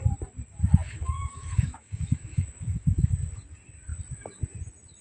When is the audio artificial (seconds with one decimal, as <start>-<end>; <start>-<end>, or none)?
0.8-3.1